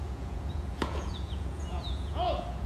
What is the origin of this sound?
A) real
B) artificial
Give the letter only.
B